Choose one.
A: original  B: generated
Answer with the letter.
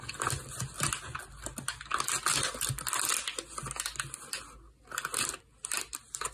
A